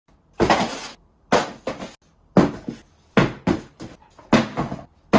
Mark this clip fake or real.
real